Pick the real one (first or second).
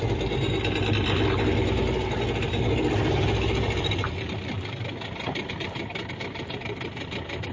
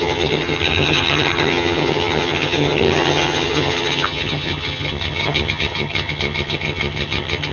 first